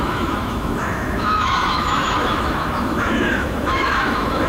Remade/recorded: remade